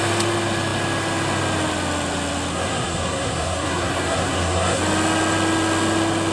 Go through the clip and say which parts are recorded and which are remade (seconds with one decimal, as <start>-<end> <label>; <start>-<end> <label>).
0.0-2.5 recorded; 2.5-4.8 remade; 4.8-6.3 recorded